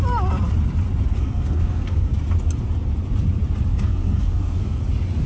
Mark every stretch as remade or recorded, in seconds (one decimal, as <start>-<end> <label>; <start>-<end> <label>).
0.0-1.1 recorded; 1.1-2.1 remade; 2.1-3.7 recorded; 3.7-4.8 remade; 4.8-5.3 recorded